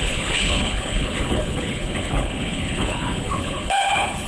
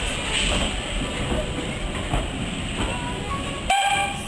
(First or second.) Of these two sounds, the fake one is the first